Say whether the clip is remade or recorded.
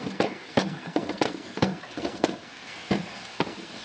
remade